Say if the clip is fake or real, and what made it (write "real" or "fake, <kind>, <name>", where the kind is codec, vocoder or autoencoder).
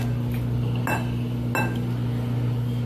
real